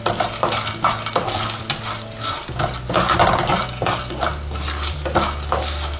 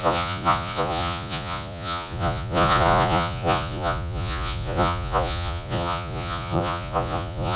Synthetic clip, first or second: second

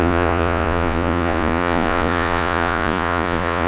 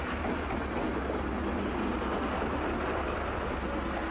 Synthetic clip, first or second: first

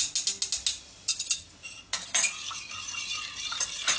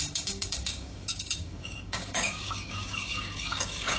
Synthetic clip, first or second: second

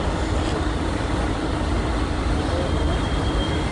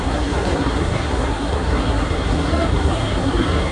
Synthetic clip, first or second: second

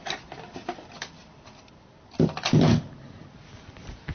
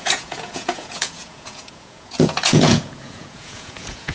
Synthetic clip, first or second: second